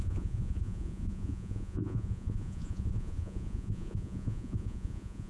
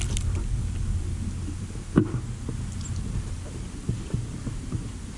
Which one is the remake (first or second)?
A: first